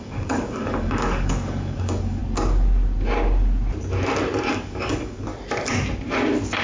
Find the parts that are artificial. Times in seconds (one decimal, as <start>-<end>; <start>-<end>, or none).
0.0-2.2; 4.5-5.3